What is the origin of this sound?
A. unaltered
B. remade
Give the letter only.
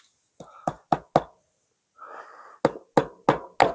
A